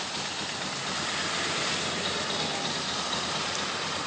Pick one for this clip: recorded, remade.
recorded